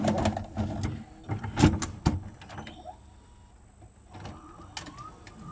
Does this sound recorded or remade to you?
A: recorded